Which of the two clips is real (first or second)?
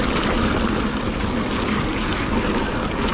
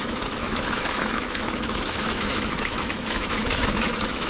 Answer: first